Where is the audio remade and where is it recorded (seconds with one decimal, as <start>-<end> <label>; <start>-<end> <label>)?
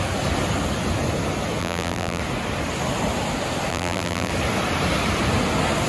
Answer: 0.0-1.6 recorded; 1.6-2.2 remade; 2.2-3.7 recorded; 3.7-4.3 remade; 4.3-5.9 recorded